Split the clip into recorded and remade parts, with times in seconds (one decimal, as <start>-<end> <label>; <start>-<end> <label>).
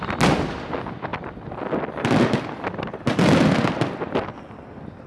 0.0-5.1 recorded